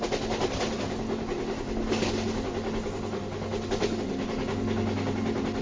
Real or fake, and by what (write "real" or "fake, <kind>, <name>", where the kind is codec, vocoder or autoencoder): real